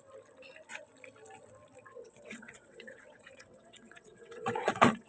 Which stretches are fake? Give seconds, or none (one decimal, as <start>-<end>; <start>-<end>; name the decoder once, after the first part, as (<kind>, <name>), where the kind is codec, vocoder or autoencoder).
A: 1.9-5.1 (vocoder, WaveNeXt)